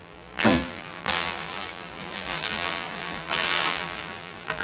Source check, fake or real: fake